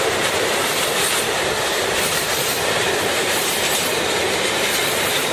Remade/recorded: remade